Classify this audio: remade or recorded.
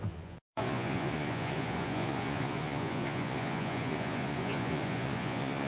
remade